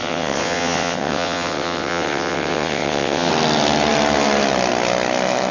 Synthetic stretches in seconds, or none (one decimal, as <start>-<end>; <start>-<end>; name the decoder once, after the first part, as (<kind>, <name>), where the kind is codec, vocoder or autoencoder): 0.0-3.3 (vocoder, WaveNeXt)